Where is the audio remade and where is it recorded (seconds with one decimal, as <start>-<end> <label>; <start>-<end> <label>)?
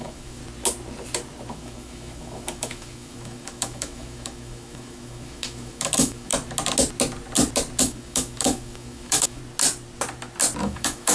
0.0-0.4 remade; 0.4-1.5 recorded; 1.5-6.3 remade; 6.3-7.8 recorded; 7.8-9.4 remade; 9.4-10.6 recorded; 10.6-11.1 remade